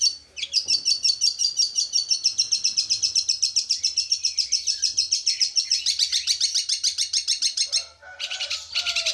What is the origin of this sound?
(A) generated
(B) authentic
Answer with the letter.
B